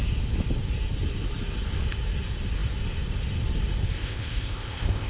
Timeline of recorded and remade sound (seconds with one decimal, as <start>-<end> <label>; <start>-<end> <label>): 0.0-3.9 recorded; 3.9-5.1 remade